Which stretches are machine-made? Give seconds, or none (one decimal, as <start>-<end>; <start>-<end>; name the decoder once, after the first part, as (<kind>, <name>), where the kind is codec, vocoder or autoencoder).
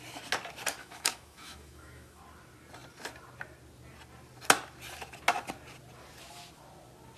0.8-2.2 (autoencoder, DAC-VAE)